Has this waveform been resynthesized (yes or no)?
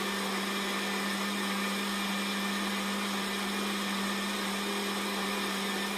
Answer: no